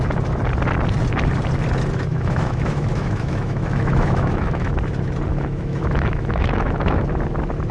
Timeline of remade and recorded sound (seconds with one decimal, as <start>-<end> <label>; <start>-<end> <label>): 0.0-2.1 recorded; 2.1-4.7 remade; 4.7-5.3 recorded; 5.3-7.1 remade; 7.1-7.7 recorded